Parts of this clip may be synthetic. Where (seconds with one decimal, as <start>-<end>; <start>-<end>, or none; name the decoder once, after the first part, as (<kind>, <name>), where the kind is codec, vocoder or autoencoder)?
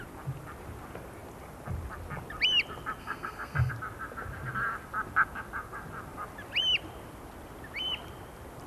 3.0-3.7 (codec, SNAC)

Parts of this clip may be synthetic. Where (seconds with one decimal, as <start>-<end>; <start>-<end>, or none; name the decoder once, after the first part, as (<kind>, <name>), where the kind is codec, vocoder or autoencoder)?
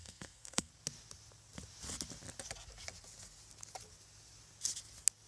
0.0-0.7 (codec, SNAC)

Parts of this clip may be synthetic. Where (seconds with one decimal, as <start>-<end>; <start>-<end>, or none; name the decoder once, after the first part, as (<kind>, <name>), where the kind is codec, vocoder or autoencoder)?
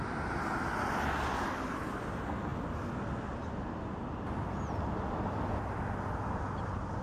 none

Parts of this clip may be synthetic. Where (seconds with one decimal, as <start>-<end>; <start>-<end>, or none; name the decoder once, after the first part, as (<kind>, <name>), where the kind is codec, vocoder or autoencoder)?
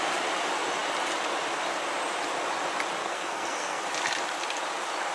3.0-3.8 (codec, SNAC)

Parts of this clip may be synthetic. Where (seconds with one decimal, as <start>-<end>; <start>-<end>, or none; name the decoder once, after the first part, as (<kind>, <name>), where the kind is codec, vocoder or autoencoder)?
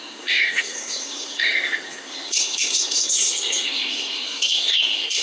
0.0-5.2 (codec, SNAC)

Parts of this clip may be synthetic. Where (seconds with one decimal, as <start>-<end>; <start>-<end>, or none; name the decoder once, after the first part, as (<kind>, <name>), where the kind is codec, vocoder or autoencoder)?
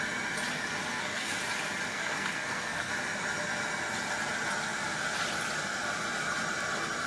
0.9-1.4 (codec, SNAC); 1.9-2.9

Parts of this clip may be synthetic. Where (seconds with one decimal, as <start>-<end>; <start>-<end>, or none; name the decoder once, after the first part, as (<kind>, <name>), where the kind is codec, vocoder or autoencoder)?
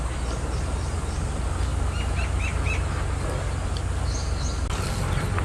none